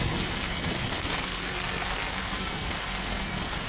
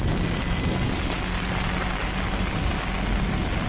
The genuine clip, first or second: second